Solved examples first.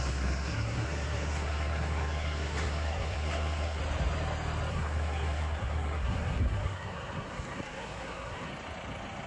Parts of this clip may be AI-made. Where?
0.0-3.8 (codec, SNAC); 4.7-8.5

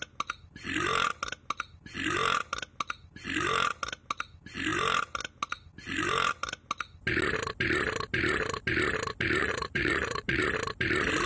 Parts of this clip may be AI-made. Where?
9.4-10.4 (vocoder, Vocos)

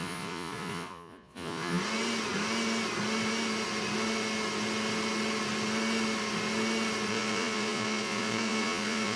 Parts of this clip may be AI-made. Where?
0.0-1.8 (vocoder, Vocos); 7.1-9.2

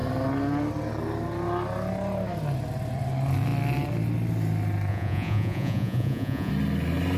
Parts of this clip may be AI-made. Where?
4.9-6.5 (vocoder, Vocos)

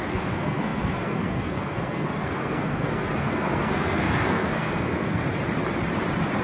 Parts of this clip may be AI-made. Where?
0.0-5.2 (codec, SNAC)